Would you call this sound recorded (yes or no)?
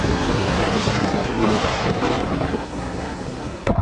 no